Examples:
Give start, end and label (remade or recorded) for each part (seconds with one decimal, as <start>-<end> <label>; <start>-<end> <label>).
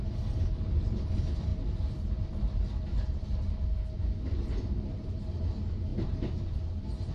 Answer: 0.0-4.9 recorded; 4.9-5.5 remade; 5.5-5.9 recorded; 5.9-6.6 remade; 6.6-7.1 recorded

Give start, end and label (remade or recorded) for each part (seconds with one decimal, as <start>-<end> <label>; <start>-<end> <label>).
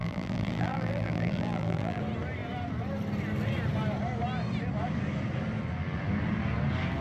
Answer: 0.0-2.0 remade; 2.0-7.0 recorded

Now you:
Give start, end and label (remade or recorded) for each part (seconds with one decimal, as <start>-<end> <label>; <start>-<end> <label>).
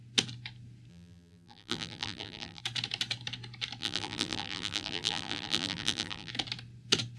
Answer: 0.0-0.9 recorded; 0.9-2.6 remade; 2.6-3.8 recorded; 3.8-6.3 remade; 6.3-7.2 recorded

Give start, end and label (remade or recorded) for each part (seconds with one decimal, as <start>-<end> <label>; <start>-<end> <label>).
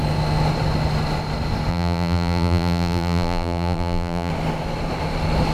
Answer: 0.0-1.7 recorded; 1.7-4.3 remade; 4.3-5.5 recorded